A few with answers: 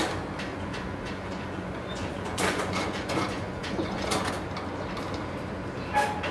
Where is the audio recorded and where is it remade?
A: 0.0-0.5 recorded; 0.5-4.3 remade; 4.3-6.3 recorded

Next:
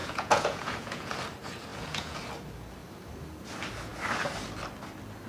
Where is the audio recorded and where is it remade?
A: 0.0-1.1 remade; 1.1-1.7 recorded; 1.7-2.2 remade; 2.2-5.3 recorded

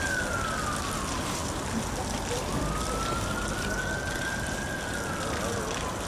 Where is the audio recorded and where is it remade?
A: 0.0-6.1 recorded

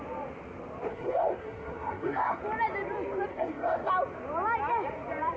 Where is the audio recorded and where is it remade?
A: 0.0-0.9 recorded; 0.9-2.4 remade; 2.4-3.3 recorded; 3.3-3.9 remade; 3.9-5.4 recorded